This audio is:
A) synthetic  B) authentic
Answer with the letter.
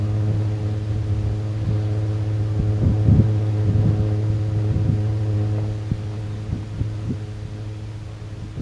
B